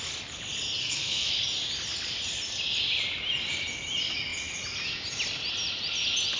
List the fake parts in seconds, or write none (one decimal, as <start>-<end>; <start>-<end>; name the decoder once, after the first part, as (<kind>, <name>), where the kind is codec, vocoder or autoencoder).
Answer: 0.8-1.3 (codec, SNAC)